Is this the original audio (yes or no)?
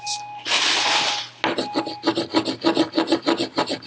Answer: yes